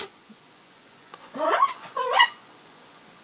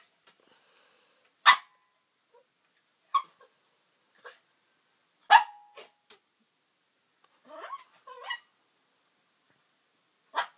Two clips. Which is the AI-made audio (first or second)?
first